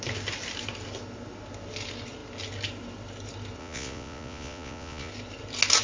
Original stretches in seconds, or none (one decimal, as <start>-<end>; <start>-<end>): 0.0-3.6; 5.1-5.8